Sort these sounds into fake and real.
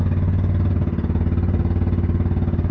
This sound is real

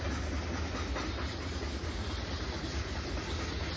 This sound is real